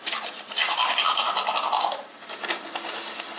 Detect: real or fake real